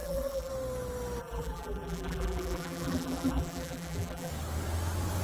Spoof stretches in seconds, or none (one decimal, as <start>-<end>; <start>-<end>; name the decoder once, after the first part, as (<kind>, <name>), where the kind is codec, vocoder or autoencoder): 0.0-0.5 (vocoder, BigVGAN v2); 1.2-4.3